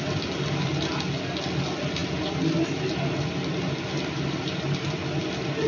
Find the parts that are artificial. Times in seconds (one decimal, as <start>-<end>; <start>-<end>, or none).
none